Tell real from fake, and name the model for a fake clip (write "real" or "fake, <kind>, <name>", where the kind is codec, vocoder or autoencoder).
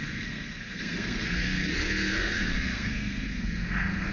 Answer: fake, codec, SNAC